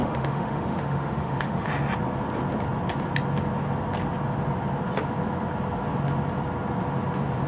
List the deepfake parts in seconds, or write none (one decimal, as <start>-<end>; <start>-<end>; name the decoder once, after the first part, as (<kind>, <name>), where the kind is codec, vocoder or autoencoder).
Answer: 0.0-1.7 (autoencoder, DAC-VAE)